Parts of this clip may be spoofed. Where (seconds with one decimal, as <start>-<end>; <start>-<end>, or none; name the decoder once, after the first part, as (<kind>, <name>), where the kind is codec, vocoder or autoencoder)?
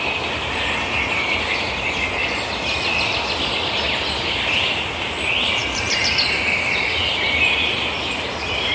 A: none